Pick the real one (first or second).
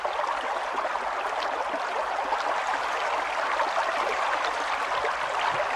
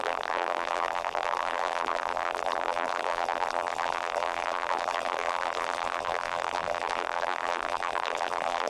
first